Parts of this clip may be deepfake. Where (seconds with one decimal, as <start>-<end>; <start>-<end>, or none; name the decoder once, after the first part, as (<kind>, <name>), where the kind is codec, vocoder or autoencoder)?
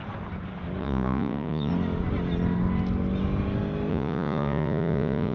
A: 0.8-1.7 (vocoder, Vocos); 3.9-5.3